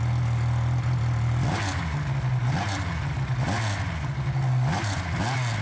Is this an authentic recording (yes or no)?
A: yes